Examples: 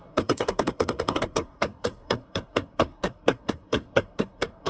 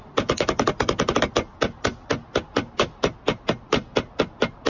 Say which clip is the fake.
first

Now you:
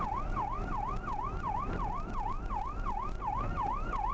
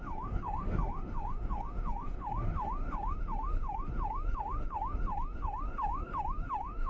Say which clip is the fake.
second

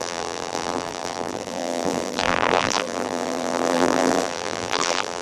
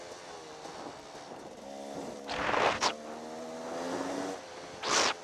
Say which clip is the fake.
first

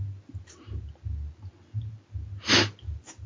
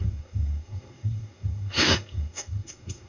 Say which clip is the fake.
second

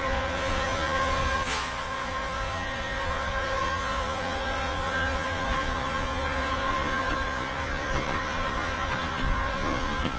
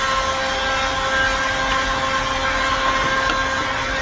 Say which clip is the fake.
first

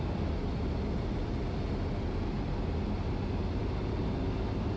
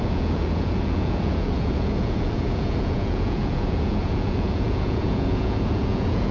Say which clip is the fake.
second